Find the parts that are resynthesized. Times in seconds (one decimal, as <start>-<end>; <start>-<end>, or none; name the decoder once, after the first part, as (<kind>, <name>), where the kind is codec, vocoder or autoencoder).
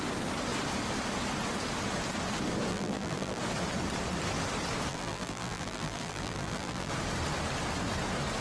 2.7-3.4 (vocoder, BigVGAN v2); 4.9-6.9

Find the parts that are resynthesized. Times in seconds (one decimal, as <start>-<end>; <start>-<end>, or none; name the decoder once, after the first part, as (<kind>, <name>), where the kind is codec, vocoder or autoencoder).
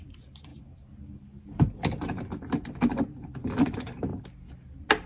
0.0-0.5 (vocoder, BigVGAN v2); 3.6-4.1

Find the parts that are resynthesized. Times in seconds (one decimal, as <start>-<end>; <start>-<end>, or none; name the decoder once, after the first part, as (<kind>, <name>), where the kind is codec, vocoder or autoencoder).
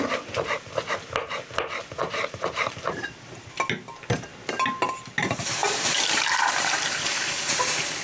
2.0-3.4 (vocoder, BigVGAN v2); 5.6-7.6